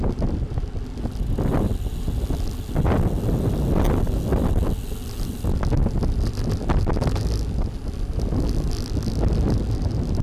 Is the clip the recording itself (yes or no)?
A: yes